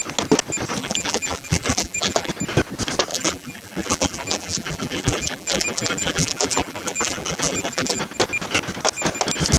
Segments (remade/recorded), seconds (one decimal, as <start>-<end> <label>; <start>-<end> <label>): 0.0-0.8 recorded; 0.8-2.3 remade; 2.3-3.1 recorded; 3.1-8.0 remade; 8.0-9.6 recorded